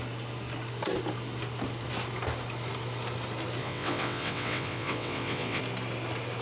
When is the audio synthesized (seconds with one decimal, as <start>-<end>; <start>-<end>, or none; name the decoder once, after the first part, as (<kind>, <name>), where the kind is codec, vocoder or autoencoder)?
3.6-5.6 (vocoder, WaveNeXt)